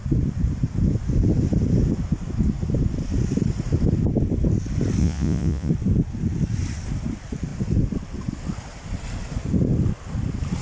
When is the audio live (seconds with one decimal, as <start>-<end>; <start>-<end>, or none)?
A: 0.0-5.0; 5.7-10.6